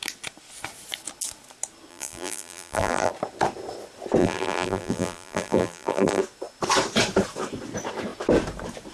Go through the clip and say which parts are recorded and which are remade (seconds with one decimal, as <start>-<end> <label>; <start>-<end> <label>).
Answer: 0.0-1.9 recorded; 1.9-3.1 remade; 3.1-4.2 recorded; 4.2-6.2 remade; 6.2-8.9 recorded